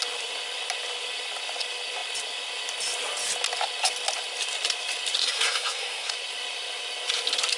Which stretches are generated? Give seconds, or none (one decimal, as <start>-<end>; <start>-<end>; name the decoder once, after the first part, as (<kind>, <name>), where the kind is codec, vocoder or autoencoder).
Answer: 5.2-6.1 (codec, SNAC)